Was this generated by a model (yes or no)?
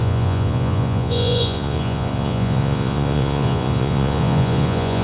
yes